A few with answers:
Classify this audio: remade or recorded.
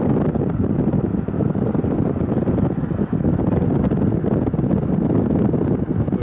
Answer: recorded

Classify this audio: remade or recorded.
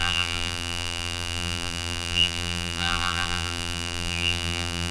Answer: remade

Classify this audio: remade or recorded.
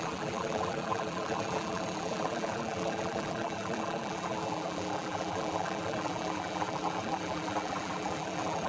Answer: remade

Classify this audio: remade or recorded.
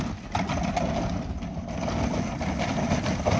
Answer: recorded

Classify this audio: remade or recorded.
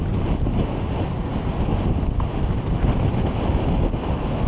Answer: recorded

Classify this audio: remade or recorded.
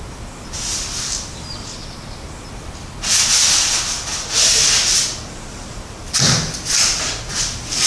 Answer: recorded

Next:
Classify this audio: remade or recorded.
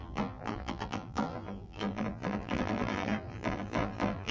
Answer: remade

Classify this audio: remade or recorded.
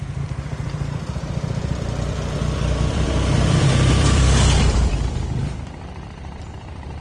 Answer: remade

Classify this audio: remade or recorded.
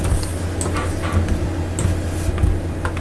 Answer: recorded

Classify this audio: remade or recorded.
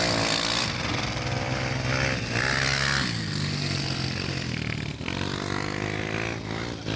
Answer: recorded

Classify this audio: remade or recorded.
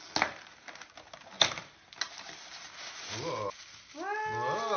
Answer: recorded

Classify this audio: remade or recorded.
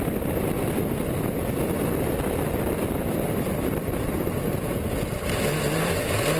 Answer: recorded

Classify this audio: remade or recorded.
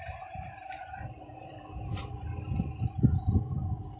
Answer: remade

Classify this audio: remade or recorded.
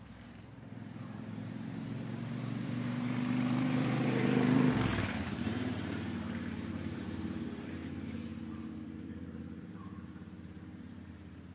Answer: remade